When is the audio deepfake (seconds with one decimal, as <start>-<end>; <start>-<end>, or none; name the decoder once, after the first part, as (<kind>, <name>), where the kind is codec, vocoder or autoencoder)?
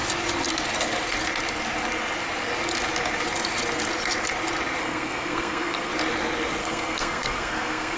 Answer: 4.8-5.9 (codec, SNAC); 6.6-8.0